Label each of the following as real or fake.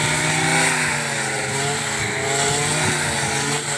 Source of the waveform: real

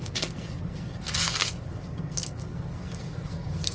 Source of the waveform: fake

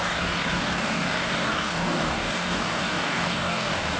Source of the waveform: fake